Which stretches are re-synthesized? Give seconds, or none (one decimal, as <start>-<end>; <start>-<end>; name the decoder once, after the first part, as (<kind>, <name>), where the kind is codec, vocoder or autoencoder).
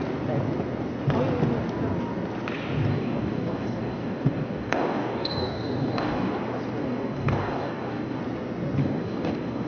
2.9-6.3 (codec, DAC); 6.8-8.2; 8.8-9.7